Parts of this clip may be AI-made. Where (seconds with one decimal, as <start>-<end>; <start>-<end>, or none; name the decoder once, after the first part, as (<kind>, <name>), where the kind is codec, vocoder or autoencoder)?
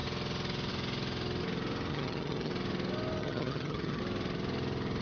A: 1.9-2.5 (vocoder, HiFi-GAN); 3.2-4.0